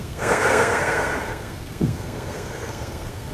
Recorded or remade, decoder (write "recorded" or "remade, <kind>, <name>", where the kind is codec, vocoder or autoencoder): remade, codec, SNAC